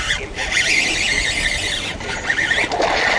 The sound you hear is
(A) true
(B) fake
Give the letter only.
A